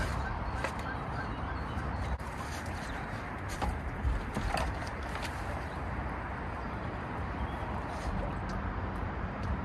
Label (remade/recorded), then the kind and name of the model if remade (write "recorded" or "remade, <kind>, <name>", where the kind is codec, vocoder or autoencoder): remade, vocoder, BigVGAN v2